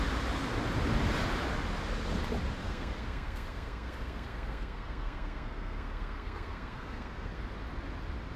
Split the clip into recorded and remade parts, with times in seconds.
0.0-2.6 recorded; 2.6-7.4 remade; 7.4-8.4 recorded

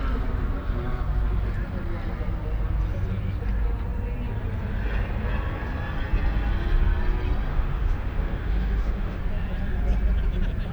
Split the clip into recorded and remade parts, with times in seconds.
0.0-7.5 recorded; 7.5-9.2 remade; 9.2-10.7 recorded

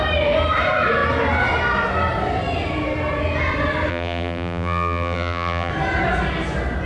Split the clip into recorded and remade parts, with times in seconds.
0.0-3.9 recorded; 3.9-5.7 remade; 5.7-6.9 recorded

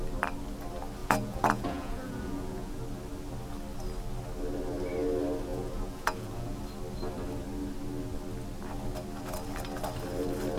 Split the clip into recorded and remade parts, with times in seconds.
0.0-1.0 recorded; 1.0-2.8 remade; 2.8-5.5 recorded; 5.5-6.6 remade; 6.6-10.6 recorded